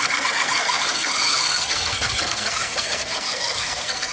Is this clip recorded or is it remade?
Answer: remade